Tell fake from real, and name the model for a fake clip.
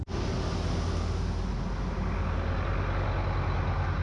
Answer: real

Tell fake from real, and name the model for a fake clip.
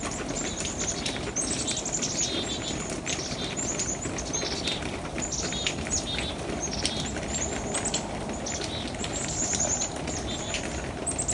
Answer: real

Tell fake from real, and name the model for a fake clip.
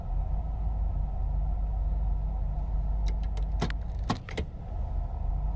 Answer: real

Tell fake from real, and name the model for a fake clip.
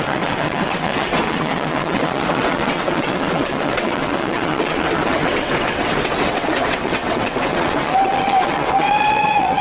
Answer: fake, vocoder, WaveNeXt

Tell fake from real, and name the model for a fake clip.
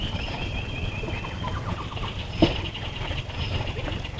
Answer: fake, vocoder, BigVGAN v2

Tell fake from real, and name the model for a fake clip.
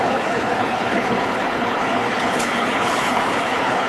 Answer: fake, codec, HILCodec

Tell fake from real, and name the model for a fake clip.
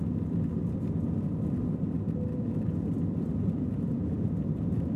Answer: real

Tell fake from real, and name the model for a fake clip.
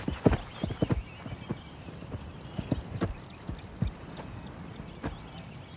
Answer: real